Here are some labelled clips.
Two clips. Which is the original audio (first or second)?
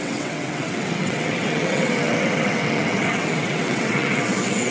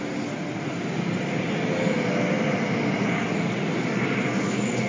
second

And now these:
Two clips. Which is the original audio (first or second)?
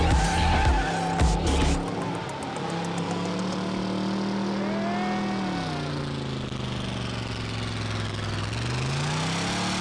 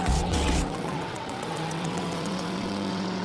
first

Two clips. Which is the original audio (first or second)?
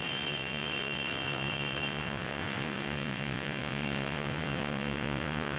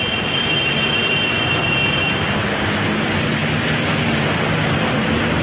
second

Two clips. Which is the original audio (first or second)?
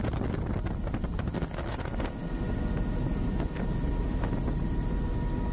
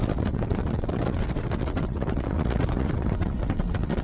first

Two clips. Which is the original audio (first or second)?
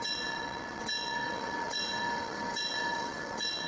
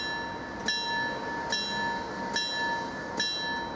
second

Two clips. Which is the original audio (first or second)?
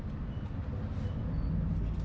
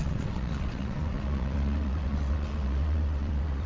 first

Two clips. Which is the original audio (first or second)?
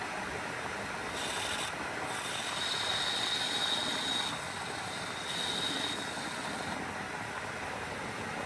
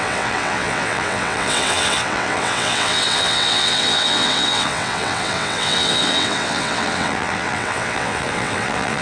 first